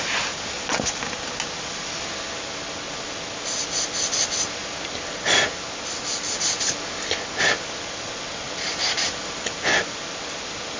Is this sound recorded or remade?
recorded